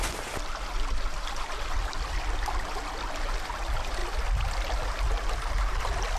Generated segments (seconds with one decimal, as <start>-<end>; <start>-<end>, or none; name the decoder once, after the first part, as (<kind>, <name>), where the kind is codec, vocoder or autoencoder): none